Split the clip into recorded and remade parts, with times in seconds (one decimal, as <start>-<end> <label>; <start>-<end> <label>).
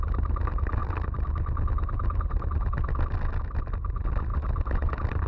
0.0-0.8 recorded; 0.8-2.5 remade; 2.5-4.3 recorded; 4.3-5.3 remade